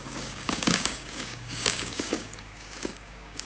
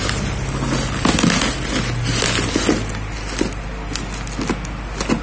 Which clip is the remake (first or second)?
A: first